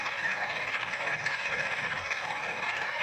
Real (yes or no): no